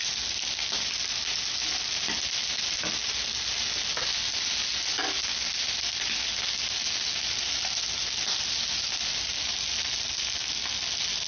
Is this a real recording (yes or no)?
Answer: yes